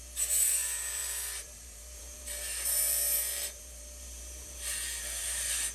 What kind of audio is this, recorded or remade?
remade